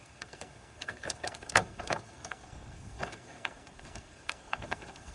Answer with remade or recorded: remade